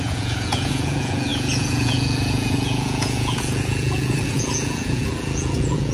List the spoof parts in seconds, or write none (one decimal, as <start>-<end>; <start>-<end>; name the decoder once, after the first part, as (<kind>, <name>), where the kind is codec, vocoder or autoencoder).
0.0-5.9 (vocoder, Vocos)